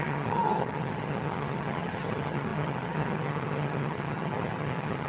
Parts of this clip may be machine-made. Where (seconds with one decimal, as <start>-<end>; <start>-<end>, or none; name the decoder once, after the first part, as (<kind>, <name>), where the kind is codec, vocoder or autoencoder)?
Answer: 0.0-5.1 (vocoder, HiFi-GAN)